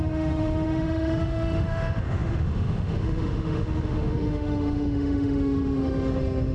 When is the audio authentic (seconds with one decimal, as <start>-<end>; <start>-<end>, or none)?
none